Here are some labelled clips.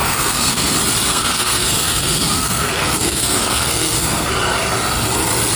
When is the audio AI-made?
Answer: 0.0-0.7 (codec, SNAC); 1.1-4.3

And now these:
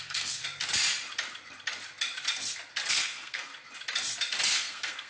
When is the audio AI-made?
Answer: 0.0-0.4 (codec, SNAC); 2.9-3.5; 4.5-5.1

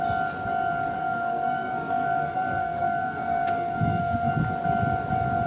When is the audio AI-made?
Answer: 1.0-4.3 (codec, SNAC)

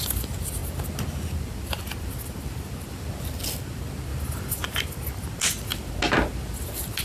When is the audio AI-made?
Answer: none